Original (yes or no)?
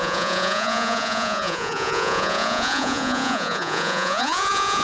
no